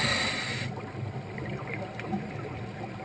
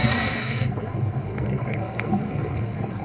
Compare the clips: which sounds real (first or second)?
first